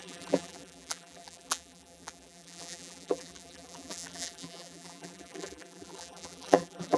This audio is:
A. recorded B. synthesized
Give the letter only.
B